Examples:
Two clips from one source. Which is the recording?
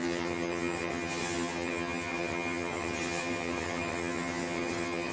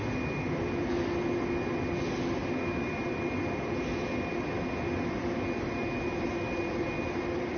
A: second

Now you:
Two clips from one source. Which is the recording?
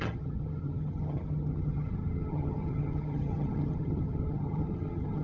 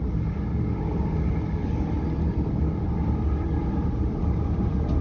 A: second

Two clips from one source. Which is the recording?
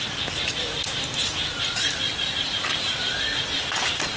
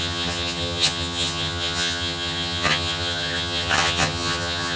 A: first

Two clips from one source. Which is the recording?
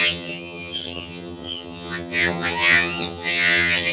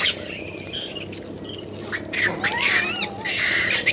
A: second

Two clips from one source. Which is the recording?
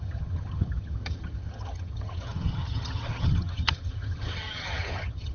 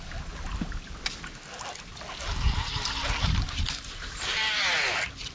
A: second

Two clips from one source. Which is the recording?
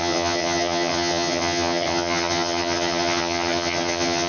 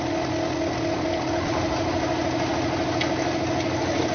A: second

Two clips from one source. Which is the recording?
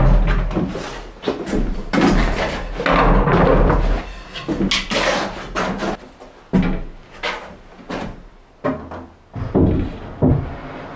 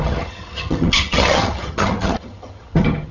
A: first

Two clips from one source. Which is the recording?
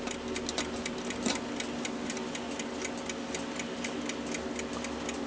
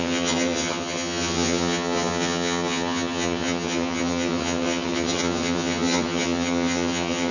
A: first